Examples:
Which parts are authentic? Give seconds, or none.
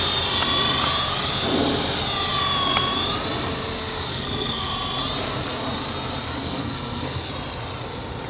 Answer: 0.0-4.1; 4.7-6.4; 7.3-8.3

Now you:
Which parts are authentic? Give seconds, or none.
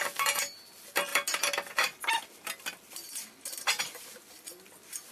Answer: 0.0-5.1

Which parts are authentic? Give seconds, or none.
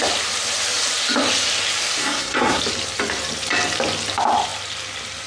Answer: 0.0-2.0; 2.6-5.3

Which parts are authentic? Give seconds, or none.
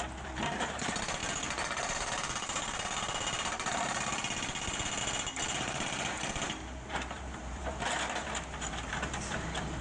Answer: none